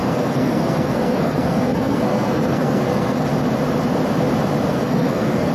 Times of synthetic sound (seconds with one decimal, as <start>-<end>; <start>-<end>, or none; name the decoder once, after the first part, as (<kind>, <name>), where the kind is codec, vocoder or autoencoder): 0.0-3.3 (codec, SNAC); 4.7-5.5